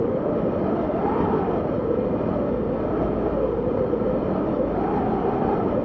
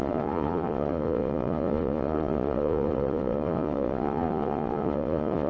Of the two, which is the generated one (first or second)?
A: second